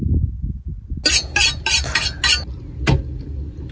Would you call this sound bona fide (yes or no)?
yes